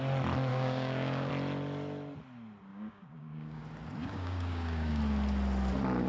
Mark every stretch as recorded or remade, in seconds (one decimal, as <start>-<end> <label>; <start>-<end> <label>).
0.0-0.5 recorded; 0.5-1.3 remade; 1.3-2.7 recorded; 2.7-3.6 remade; 3.6-4.0 recorded; 4.0-5.0 remade; 5.0-6.1 recorded